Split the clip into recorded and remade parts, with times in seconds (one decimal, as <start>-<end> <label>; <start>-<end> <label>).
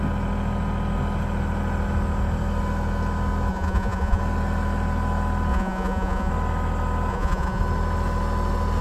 0.0-3.5 recorded; 3.5-4.2 remade; 4.2-5.5 recorded; 5.5-6.3 remade; 6.3-7.1 recorded; 7.1-7.6 remade; 7.6-8.8 recorded